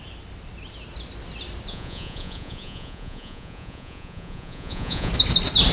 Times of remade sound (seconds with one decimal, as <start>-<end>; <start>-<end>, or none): 1.7-5.1